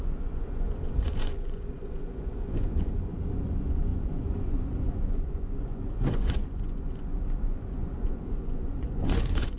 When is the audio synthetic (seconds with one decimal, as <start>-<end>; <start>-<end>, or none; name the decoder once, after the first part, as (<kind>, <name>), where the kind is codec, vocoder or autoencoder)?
0.0-9.6 (vocoder, Vocos)